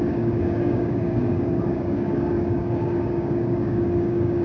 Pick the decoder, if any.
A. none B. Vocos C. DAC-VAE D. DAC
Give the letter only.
D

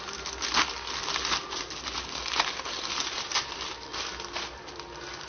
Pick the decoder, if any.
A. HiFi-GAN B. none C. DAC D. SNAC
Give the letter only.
B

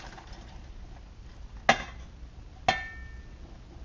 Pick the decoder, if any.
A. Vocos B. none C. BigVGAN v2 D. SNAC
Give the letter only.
B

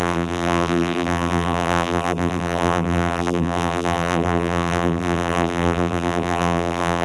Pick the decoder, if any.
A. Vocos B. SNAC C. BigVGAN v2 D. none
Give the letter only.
C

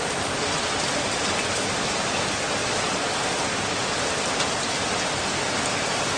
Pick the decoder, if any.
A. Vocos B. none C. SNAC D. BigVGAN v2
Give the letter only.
D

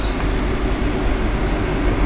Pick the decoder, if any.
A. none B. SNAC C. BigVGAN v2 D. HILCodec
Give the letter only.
A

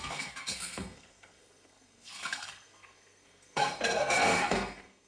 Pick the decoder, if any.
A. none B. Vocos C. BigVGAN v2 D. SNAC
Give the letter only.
D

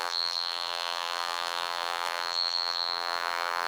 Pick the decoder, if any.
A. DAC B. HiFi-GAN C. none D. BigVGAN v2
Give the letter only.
D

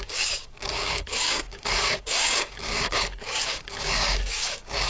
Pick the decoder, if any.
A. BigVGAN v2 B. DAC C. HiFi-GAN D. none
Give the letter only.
B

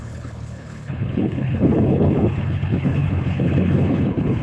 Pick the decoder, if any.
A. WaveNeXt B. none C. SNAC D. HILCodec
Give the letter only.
D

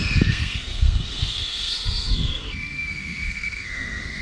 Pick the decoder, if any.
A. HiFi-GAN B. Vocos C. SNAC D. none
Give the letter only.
C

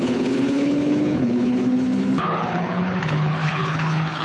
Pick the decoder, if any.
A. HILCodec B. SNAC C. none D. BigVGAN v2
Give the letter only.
A